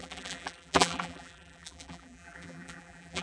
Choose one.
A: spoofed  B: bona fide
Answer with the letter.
A